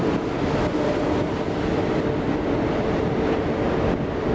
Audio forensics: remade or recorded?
recorded